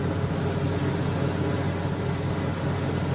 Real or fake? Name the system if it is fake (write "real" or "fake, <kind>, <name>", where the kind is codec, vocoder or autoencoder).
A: real